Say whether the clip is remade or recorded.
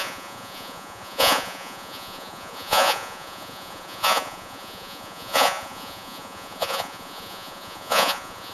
remade